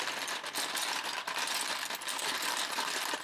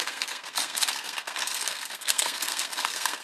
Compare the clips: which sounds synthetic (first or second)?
second